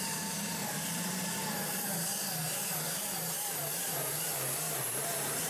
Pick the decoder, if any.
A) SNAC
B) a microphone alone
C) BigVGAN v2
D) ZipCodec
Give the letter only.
C